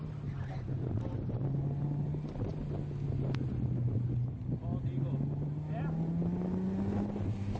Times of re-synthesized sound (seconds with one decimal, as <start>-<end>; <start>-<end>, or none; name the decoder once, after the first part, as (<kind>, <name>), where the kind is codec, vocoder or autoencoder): none